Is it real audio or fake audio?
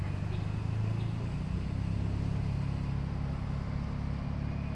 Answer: real